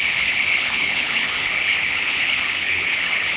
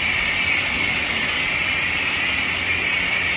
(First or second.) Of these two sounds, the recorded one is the second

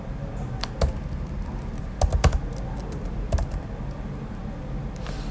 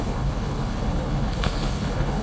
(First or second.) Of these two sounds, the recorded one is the first